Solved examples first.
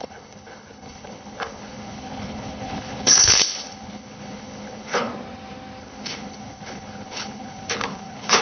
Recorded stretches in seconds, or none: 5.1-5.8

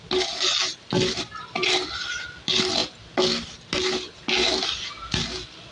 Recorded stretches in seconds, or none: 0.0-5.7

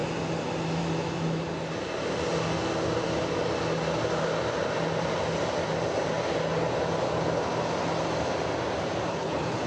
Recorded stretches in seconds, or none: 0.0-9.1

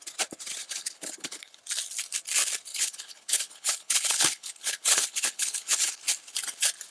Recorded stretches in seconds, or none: 0.0-0.6; 1.6-2.7; 6.0-6.9

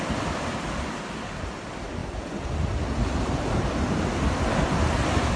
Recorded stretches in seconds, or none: 0.0-5.4